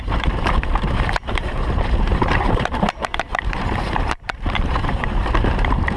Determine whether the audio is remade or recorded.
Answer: remade